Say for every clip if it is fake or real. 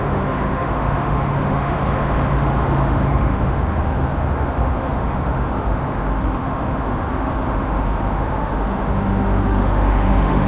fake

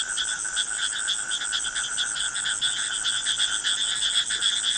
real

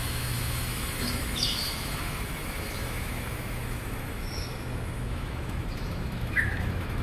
fake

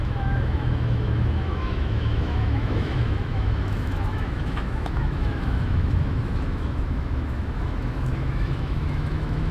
fake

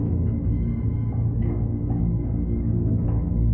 fake